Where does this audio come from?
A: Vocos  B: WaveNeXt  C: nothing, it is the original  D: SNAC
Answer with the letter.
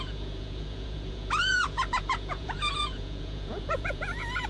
A